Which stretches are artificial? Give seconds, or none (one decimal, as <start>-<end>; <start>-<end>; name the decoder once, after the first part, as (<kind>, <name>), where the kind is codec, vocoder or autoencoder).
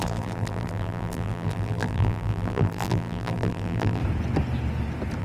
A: 0.0-4.0 (vocoder, BigVGAN v2)